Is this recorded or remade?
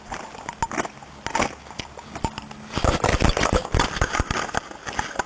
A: recorded